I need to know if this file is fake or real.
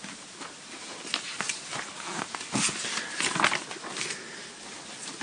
real